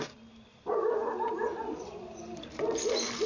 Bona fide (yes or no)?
yes